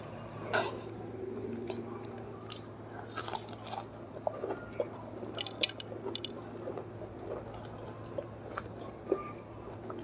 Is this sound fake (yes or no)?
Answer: no